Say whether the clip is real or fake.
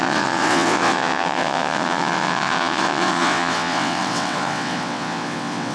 fake